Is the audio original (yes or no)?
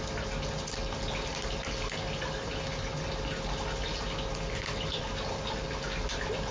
yes